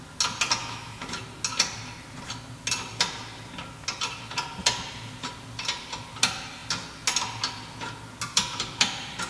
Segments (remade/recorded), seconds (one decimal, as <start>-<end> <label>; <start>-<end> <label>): 0.0-0.6 recorded; 0.6-1.2 remade; 1.2-9.3 recorded